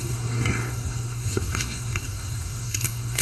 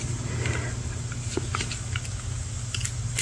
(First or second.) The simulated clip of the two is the first